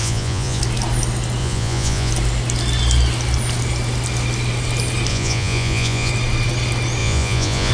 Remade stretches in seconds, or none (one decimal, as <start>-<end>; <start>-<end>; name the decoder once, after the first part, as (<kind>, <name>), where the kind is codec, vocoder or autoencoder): 0.0-0.6 (vocoder, Vocos); 1.4-2.1; 5.1-6.1; 7.0-7.7